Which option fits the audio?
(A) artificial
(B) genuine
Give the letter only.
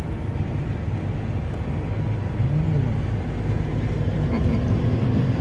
B